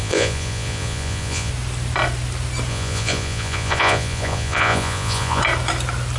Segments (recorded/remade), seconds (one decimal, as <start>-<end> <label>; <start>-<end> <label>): 0.0-1.5 remade; 1.5-2.7 recorded; 2.7-5.4 remade; 5.4-6.2 recorded